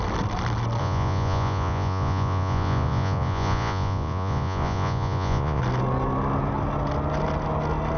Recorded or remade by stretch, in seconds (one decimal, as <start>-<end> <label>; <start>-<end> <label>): 0.0-0.8 recorded; 0.8-5.6 remade; 5.6-8.0 recorded